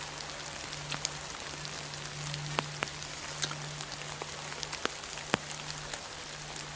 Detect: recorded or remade recorded